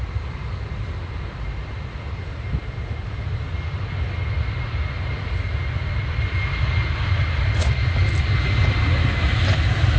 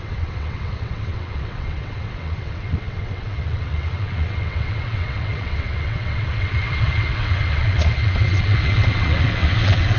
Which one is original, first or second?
first